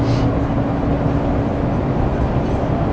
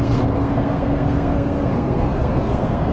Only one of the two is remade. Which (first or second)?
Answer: second